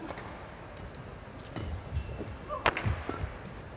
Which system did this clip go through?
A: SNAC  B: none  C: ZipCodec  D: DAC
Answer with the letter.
B